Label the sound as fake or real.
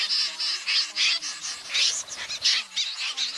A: real